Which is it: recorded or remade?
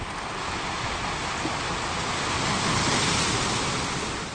recorded